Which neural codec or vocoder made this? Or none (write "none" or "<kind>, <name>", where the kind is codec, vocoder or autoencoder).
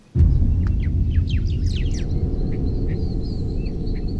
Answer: none